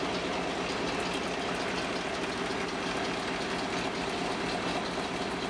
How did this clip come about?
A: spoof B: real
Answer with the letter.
B